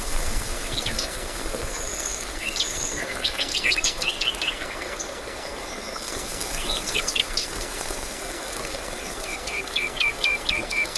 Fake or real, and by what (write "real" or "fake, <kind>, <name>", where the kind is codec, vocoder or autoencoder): fake, codec, SNAC